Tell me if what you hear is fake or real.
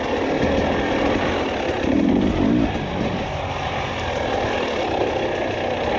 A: real